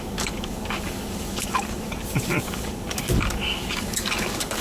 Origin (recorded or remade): remade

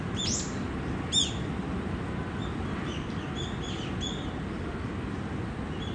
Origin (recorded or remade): remade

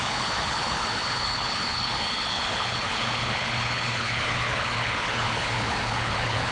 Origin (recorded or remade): remade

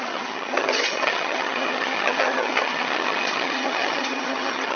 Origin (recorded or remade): remade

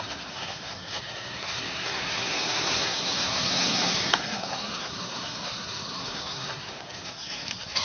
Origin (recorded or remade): remade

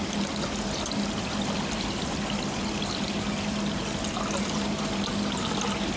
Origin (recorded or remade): recorded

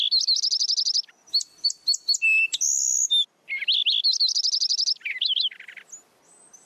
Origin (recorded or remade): recorded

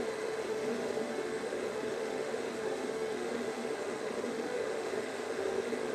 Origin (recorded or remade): remade